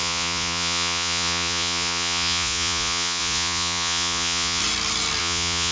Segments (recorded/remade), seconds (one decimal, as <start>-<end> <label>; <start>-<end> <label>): 0.0-4.6 remade; 4.6-5.2 recorded; 5.2-5.7 remade